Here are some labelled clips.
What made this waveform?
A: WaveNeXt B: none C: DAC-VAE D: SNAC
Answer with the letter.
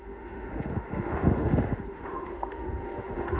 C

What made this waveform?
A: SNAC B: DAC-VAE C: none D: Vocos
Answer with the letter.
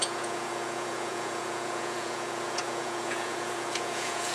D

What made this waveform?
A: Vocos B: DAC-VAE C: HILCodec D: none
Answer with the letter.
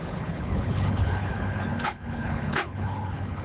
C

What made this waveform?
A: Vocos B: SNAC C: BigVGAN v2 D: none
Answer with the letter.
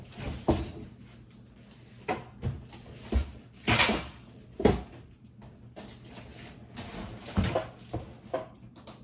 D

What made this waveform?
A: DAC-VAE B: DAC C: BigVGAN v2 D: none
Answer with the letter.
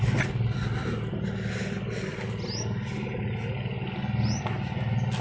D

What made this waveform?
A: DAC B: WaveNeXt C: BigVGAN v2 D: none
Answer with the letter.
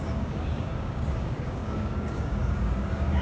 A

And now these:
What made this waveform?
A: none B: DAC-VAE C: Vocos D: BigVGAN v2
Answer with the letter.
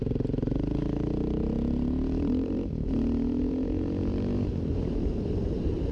D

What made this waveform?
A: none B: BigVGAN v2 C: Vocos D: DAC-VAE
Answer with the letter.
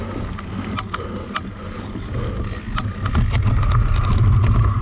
A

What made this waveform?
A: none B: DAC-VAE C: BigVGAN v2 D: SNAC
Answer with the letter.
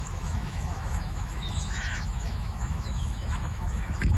B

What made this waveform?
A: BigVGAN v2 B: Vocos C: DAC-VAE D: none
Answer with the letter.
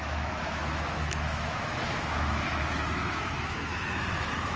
C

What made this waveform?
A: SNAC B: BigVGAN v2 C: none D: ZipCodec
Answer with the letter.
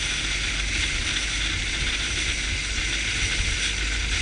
C